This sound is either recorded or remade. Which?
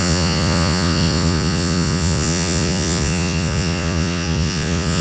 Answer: remade